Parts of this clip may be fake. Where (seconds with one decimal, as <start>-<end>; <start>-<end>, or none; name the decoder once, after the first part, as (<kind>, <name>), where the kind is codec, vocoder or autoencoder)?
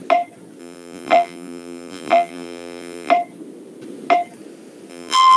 0.6-3.1 (vocoder, BigVGAN v2); 4.9-5.4